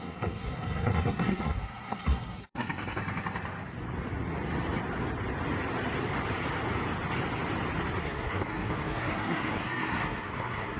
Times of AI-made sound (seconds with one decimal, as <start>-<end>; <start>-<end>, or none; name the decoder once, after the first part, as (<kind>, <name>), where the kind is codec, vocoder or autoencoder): 0.0-3.0 (codec, SNAC); 8.0-10.8